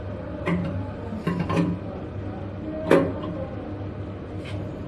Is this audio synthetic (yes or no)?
no